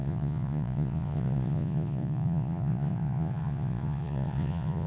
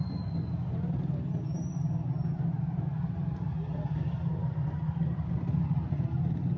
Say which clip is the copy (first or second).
first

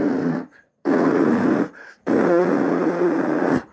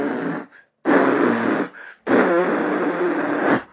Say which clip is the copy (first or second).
first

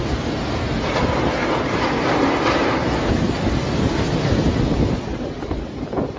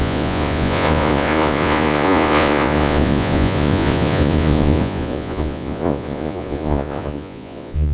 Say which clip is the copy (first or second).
second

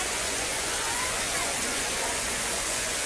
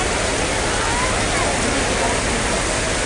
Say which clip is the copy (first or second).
first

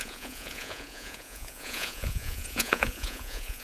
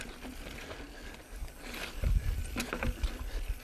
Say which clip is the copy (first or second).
first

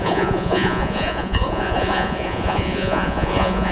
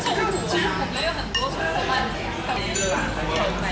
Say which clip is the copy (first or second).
first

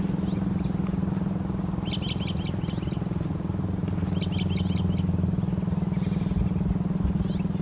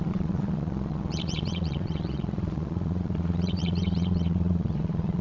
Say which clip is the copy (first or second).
second